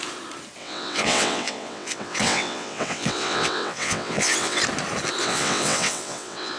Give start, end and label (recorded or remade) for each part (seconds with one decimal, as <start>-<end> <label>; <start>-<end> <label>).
0.0-0.6 recorded; 0.6-4.6 remade; 4.6-5.2 recorded; 5.2-6.6 remade